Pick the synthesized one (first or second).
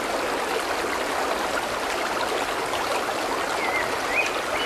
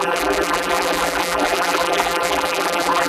second